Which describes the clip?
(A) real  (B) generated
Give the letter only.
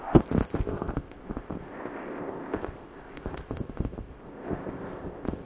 B